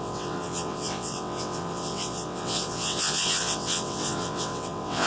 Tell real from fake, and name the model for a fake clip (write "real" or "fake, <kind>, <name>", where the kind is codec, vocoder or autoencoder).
fake, vocoder, WaveNeXt